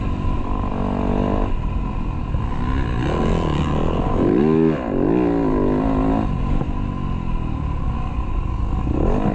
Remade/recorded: recorded